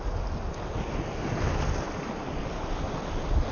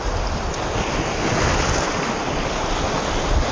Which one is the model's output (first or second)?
second